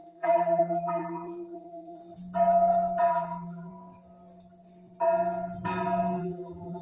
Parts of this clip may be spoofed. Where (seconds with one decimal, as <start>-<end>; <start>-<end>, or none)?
0.0-2.0; 3.1-3.7; 6.2-6.8